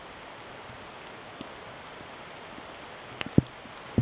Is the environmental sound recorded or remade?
recorded